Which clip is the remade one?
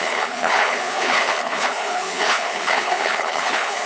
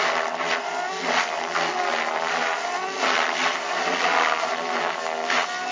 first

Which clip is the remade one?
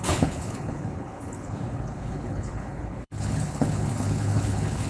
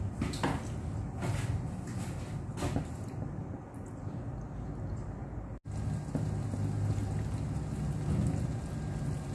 first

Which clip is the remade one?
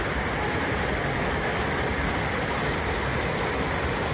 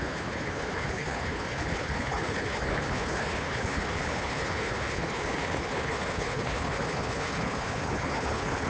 second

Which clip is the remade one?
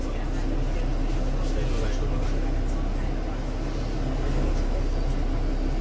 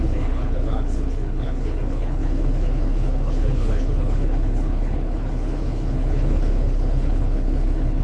second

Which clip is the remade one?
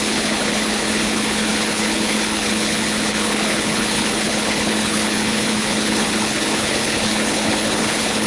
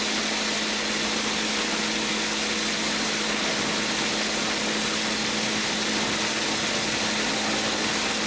first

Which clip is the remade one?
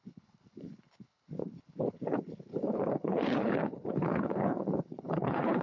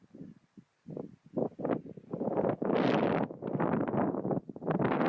first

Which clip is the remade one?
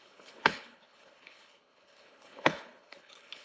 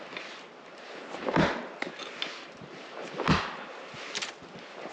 first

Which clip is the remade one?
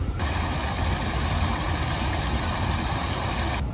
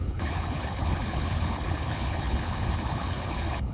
second